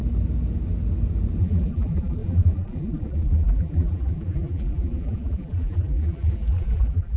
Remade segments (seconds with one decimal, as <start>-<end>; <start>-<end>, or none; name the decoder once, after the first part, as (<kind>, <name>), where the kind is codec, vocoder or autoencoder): 1.4-7.2 (vocoder, BigVGAN v2)